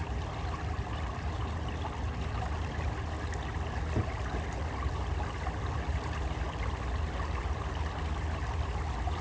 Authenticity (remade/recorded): recorded